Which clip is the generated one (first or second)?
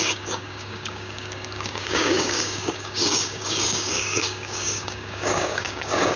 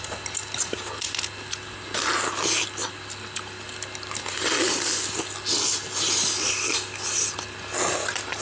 first